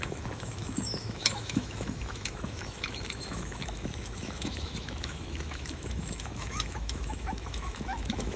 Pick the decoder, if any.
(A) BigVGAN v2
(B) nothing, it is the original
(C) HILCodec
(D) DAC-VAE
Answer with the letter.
D